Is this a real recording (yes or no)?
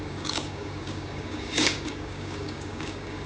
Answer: no